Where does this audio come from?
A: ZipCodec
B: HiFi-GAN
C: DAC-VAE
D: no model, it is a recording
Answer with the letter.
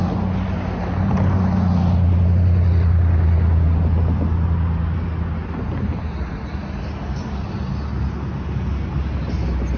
D